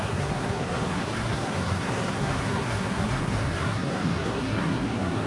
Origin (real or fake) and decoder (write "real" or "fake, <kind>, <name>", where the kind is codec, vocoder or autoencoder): fake, codec, SNAC